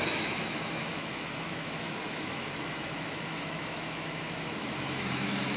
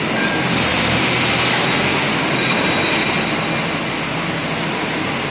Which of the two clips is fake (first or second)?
first